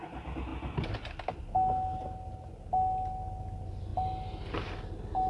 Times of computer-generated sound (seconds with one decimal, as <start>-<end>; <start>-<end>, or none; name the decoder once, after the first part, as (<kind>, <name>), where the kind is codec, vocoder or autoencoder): none